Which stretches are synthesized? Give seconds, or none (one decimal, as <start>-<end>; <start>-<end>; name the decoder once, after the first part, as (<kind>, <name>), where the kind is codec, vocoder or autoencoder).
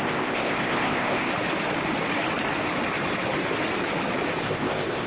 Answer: 0.0-1.3 (codec, ZipCodec); 4.4-5.1